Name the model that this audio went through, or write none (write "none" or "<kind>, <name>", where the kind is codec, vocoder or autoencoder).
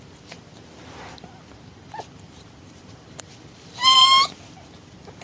vocoder, BigVGAN v2